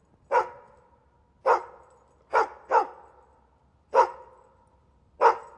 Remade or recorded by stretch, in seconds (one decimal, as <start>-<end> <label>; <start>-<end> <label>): 0.0-5.6 recorded